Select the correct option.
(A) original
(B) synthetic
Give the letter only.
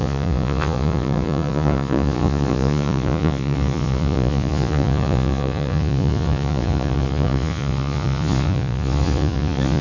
B